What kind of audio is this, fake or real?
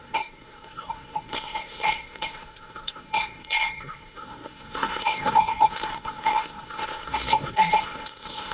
fake